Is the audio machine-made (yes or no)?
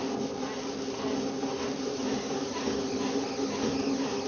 no